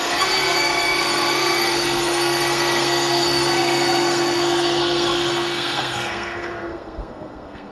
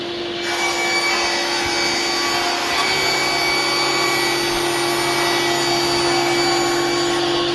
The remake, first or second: first